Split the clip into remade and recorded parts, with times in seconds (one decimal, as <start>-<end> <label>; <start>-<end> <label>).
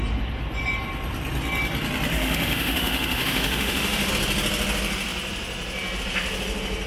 0.0-2.1 recorded; 2.1-4.1 remade; 4.1-6.9 recorded